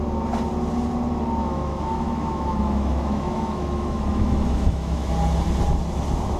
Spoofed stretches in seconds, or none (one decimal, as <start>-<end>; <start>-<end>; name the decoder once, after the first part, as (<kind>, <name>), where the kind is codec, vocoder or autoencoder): 1.4-5.1 (autoencoder, DAC-VAE)